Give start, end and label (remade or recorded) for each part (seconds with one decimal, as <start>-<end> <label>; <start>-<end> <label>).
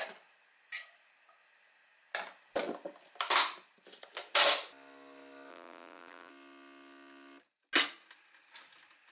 0.0-5.5 recorded; 5.5-6.3 remade; 6.3-9.1 recorded